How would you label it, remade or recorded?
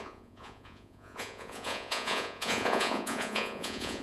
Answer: remade